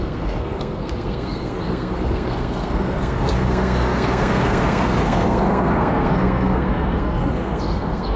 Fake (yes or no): yes